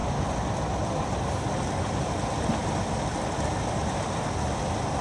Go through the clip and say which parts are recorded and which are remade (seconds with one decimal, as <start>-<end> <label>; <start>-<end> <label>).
0.0-5.0 recorded